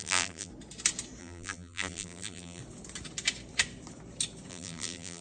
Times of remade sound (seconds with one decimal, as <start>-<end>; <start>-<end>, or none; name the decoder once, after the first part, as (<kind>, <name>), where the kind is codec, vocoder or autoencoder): 0.0-0.5 (vocoder, BigVGAN v2); 1.2-2.6; 4.5-5.2